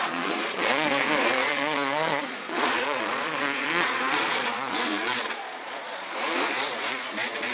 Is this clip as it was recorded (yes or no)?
no